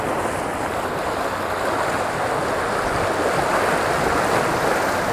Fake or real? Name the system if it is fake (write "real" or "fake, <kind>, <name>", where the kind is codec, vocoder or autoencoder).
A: real